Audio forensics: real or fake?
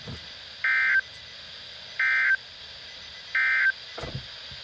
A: real